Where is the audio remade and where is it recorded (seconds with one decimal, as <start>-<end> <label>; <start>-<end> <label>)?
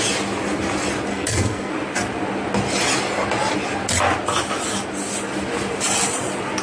0.0-1.1 recorded; 1.1-1.7 remade; 1.7-6.6 recorded